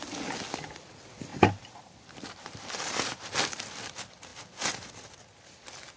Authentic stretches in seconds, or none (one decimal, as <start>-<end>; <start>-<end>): 0.0-1.3; 3.7-6.0